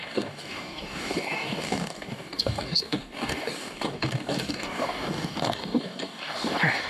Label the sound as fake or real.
fake